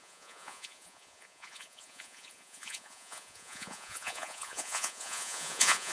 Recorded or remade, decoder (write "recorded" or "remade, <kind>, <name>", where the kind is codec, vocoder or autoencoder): remade, vocoder, Vocos